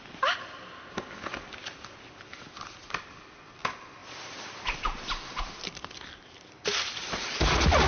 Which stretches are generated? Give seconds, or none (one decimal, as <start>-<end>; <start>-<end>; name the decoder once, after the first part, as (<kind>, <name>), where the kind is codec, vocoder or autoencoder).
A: 2.3-2.9 (vocoder, BigVGAN v2); 4.0-7.9